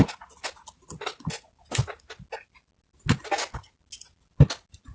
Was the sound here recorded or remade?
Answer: recorded